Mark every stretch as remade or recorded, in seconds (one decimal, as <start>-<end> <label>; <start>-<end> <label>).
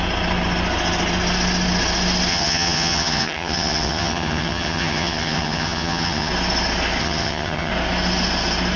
0.0-2.3 recorded; 2.3-6.3 remade; 6.3-7.0 recorded; 7.0-7.7 remade; 7.7-8.8 recorded